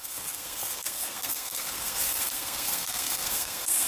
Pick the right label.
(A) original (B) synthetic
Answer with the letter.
B